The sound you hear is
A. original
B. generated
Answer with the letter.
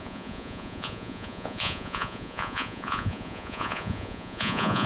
B